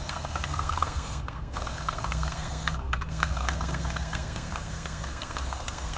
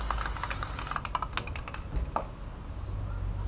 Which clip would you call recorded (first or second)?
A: second